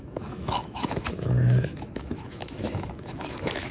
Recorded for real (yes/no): no